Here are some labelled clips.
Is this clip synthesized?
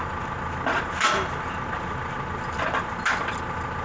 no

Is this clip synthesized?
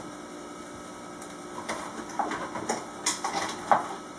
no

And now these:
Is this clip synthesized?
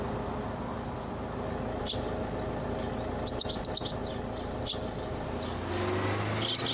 no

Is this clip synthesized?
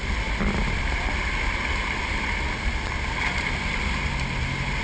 no